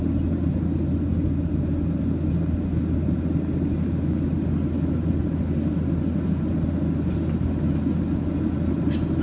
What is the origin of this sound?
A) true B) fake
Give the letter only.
A